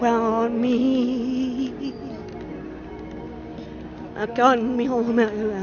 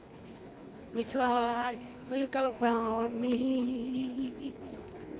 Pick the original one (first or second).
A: first